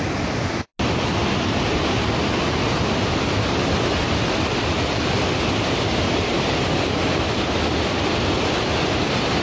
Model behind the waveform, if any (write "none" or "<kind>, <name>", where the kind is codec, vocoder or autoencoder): none